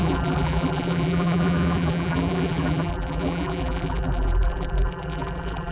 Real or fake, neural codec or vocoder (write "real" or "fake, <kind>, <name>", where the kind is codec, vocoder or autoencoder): fake, vocoder, BigVGAN v2